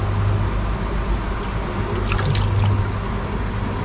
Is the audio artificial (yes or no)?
no